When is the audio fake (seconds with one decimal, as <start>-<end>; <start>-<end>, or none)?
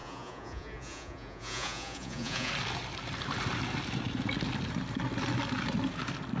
0.0-2.5